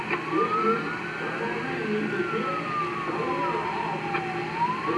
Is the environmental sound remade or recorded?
recorded